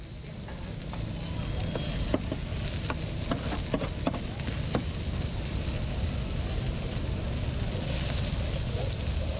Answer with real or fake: real